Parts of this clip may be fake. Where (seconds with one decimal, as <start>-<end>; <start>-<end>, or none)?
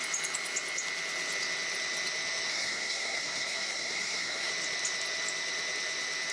2.5-4.5